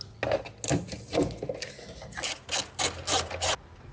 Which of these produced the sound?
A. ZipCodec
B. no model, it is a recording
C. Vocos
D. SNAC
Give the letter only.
B